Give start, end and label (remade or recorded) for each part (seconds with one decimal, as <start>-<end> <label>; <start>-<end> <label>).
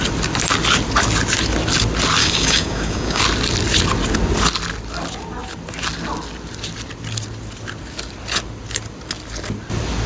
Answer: 0.0-2.2 recorded; 2.2-3.2 remade; 3.2-10.1 recorded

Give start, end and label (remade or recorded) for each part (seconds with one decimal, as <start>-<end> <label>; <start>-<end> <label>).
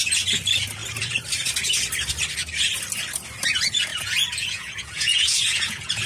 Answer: 0.0-3.9 recorded; 3.9-6.1 remade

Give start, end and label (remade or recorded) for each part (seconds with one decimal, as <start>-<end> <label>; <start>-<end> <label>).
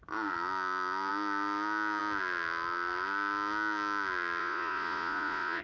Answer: 0.0-4.4 recorded; 4.4-5.6 remade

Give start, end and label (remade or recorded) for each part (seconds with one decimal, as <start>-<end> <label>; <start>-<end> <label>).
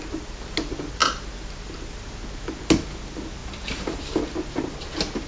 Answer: 0.0-5.3 recorded